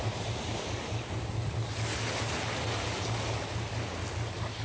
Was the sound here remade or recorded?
recorded